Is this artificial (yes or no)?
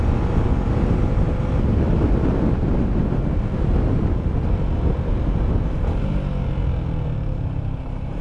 no